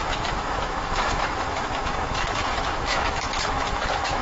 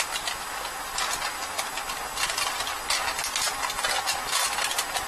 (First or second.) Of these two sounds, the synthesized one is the first